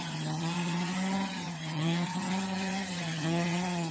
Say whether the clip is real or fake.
fake